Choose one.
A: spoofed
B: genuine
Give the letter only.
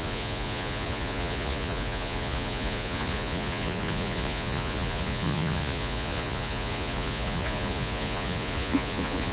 A